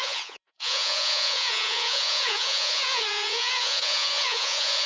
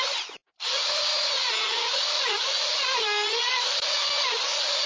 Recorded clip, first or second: second